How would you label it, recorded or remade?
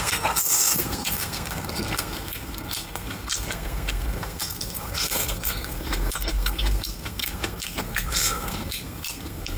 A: remade